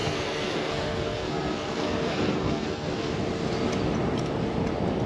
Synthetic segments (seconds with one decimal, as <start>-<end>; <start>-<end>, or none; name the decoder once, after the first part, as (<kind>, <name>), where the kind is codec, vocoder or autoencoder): 0.0-3.1 (codec, SNAC)